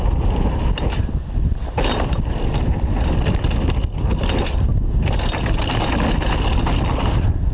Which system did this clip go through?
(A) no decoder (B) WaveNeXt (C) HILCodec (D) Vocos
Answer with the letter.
A